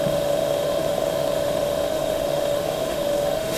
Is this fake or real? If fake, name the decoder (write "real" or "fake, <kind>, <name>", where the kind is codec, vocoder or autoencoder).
fake, autoencoder, DAC-VAE